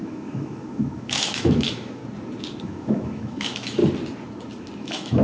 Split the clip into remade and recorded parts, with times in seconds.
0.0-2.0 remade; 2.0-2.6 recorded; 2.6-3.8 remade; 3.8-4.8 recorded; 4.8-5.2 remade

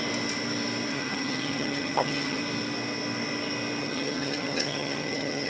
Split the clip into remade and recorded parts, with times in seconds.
0.0-0.9 recorded; 0.9-2.4 remade; 2.4-3.8 recorded; 3.8-5.5 remade

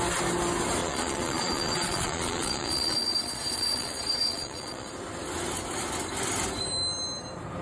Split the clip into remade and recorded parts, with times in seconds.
0.0-0.8 recorded; 0.8-4.9 remade; 4.9-7.6 recorded

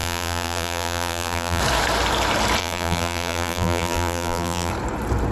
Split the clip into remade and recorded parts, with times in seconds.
0.0-1.6 remade; 1.6-2.6 recorded; 2.6-4.7 remade; 4.7-5.3 recorded

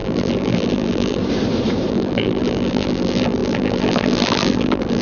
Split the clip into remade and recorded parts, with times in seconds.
0.0-1.2 remade; 1.2-1.9 recorded; 1.9-5.0 remade

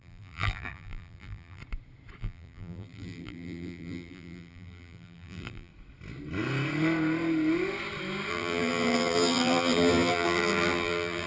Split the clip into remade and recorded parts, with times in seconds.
0.0-1.6 remade; 1.6-2.2 recorded; 2.2-5.7 remade; 5.7-8.3 recorded; 8.3-11.3 remade